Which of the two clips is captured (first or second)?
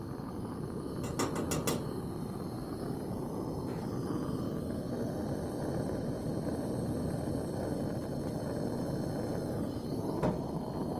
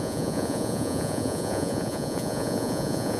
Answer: first